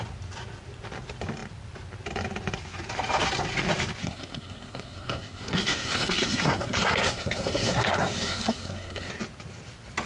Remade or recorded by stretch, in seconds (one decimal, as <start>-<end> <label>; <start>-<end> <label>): 0.0-4.0 recorded; 4.0-9.1 remade; 9.1-10.1 recorded